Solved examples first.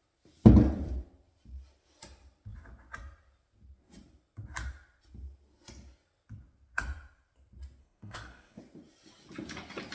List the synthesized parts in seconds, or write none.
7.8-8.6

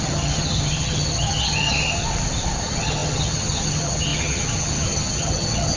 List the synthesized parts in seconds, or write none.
0.0-2.0; 2.6-5.8

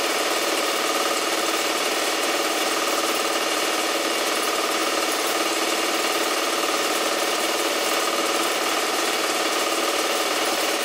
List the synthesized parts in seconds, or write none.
0.0-10.8

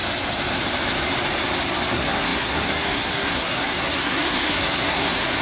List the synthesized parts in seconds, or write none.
1.9-5.4

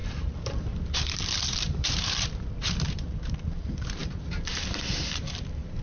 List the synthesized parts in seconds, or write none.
0.0-5.8

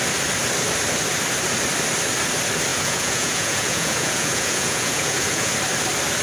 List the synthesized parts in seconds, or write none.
2.7-5.5

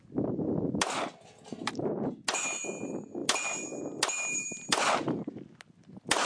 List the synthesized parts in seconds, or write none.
none

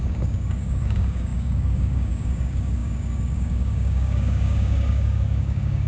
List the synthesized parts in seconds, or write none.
0.0-5.9